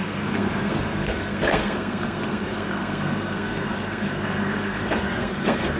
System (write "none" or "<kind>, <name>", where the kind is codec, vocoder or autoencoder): codec, SNAC